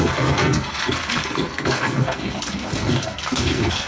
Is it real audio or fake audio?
fake